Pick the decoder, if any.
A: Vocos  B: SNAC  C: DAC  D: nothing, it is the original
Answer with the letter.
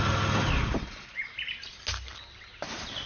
D